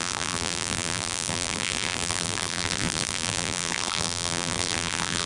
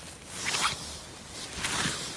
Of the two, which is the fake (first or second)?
first